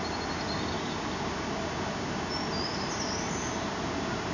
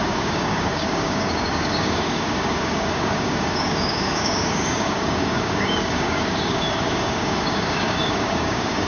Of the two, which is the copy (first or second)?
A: second